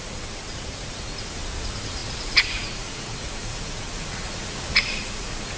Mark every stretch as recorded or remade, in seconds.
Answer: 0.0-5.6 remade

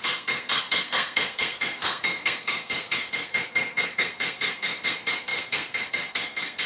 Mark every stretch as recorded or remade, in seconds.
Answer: 0.0-6.7 remade